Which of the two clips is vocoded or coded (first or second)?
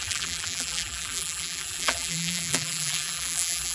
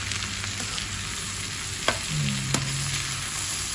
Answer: first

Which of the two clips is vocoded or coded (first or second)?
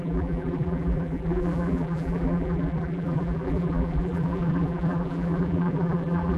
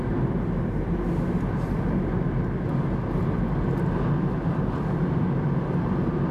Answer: first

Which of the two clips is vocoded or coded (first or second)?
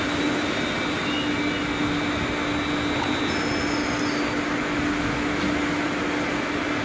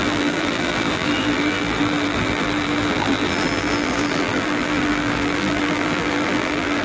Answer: second